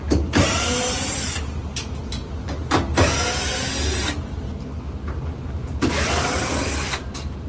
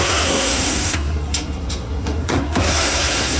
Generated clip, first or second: second